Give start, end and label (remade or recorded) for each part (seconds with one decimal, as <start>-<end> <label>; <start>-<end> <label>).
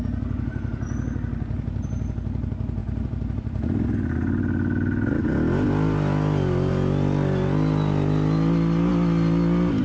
0.0-9.8 recorded